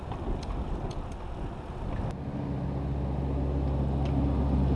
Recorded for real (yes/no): yes